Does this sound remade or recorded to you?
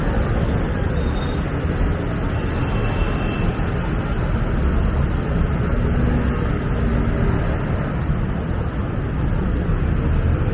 recorded